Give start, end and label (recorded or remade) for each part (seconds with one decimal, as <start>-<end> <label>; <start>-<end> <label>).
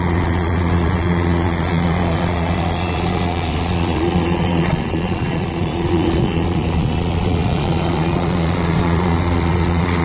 0.0-10.0 remade